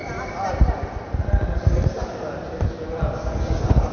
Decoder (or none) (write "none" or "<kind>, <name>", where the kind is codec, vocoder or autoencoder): none